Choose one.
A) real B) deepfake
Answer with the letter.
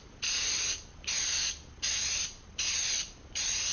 A